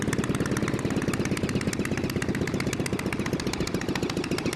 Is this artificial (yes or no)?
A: no